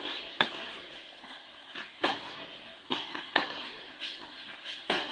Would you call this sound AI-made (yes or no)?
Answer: yes